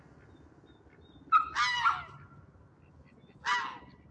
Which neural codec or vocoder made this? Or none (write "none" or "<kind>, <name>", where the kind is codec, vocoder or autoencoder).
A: none